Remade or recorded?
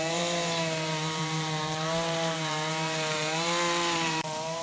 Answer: remade